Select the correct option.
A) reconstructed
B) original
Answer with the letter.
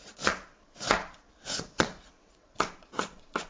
A